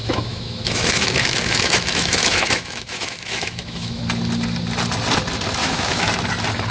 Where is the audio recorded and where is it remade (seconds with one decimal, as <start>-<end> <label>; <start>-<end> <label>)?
0.0-4.0 remade; 4.0-5.6 recorded; 5.6-6.1 remade; 6.1-6.7 recorded